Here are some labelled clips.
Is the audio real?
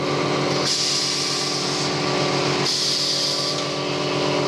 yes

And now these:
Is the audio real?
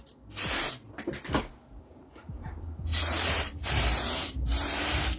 yes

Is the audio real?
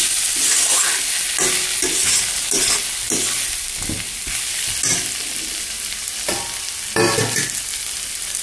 yes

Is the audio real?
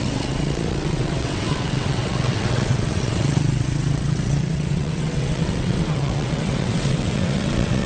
no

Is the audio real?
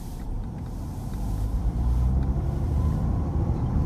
no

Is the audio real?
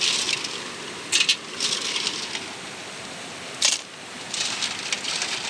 yes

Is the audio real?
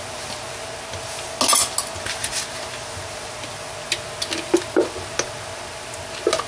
yes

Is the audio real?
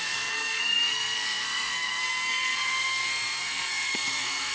no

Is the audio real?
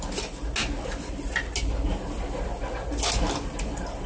yes